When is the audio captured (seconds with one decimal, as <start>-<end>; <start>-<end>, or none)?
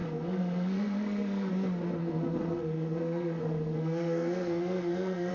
1.5-2.0